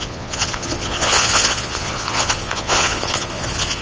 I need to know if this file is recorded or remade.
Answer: remade